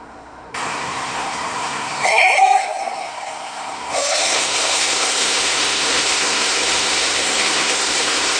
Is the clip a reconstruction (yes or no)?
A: yes